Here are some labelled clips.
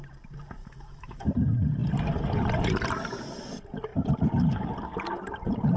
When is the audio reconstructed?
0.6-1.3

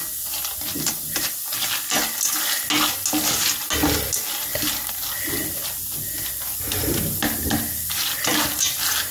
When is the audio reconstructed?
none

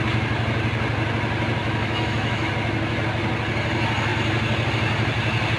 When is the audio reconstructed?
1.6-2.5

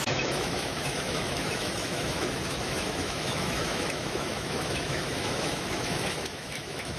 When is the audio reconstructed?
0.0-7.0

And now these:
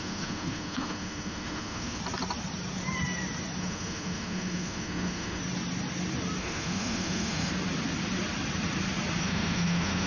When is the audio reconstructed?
0.0-2.0; 3.6-5.4; 6.4-7.5; 9.2-10.1

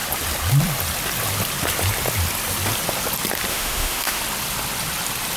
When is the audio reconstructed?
3.5-4.2

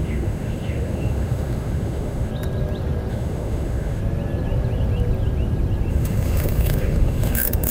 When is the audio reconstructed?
0.0-2.3; 3.1-4.0; 5.9-7.7

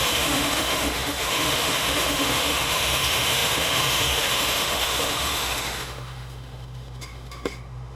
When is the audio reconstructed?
0.0-8.0